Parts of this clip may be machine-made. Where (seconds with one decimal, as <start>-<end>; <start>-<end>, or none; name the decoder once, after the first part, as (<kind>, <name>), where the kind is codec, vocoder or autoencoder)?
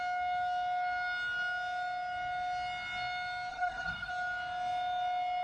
3.5-4.1 (codec, SNAC)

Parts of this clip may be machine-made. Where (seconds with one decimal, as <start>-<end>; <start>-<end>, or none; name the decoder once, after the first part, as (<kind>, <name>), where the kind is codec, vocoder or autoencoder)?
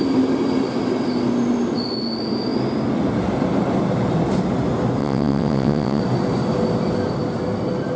5.0-6.0 (vocoder, WaveNeXt)